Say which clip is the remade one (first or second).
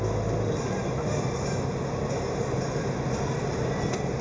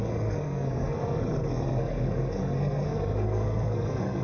second